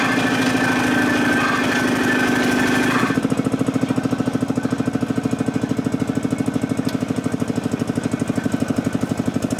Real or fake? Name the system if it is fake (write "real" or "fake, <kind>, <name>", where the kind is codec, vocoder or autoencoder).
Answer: real